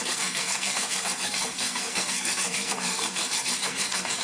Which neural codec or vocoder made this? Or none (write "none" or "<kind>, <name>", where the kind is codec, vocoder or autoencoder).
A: codec, SNAC